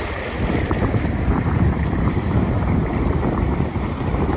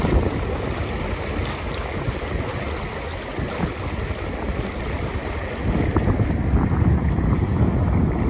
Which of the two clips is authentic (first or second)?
second